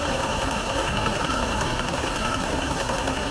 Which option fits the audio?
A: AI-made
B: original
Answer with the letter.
A